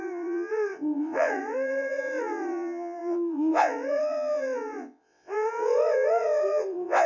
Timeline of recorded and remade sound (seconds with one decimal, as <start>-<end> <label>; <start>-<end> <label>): 0.0-7.1 remade